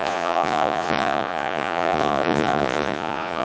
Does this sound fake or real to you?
fake